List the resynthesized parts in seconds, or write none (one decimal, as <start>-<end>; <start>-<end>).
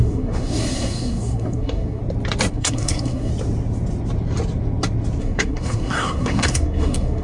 0.0-2.0; 2.5-3.3; 5.2-7.2